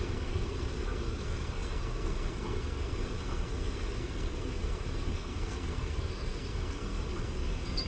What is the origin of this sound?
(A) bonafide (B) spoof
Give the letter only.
B